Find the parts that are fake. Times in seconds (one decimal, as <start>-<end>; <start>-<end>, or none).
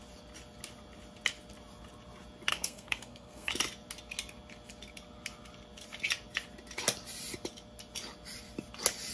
2.5-3.5